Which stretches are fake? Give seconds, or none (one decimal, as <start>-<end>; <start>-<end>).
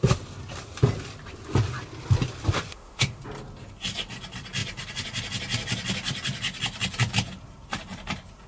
2.7-3.2